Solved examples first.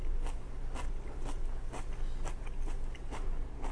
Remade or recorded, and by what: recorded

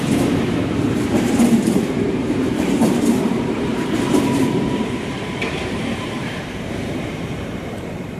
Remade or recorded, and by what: remade, vocoder, BigVGAN v2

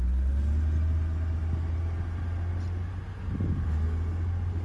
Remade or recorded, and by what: recorded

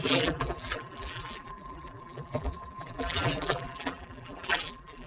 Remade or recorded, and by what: remade, vocoder, BigVGAN v2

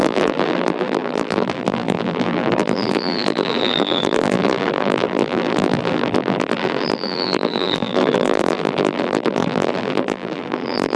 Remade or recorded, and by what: remade, vocoder, BigVGAN v2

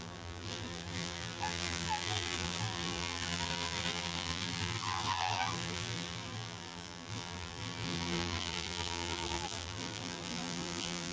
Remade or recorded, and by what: remade, vocoder, BigVGAN v2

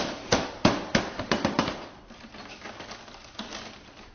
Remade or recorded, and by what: remade, vocoder, BigVGAN v2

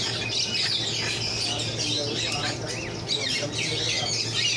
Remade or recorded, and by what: recorded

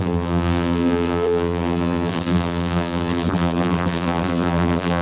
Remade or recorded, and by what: remade, vocoder, BigVGAN v2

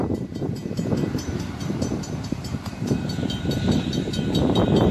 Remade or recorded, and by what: remade, vocoder, BigVGAN v2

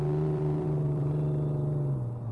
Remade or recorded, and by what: remade, vocoder, BigVGAN v2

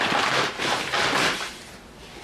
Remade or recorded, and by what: recorded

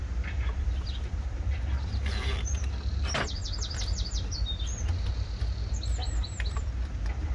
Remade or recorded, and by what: remade, vocoder, BigVGAN v2